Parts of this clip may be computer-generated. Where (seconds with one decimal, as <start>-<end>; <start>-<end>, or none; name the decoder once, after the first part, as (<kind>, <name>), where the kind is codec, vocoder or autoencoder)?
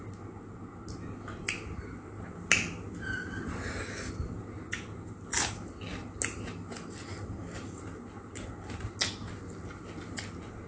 none